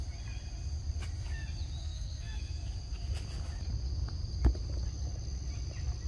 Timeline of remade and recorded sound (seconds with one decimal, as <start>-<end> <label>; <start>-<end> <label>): 0.0-1.8 recorded; 1.8-2.4 remade; 2.4-6.1 recorded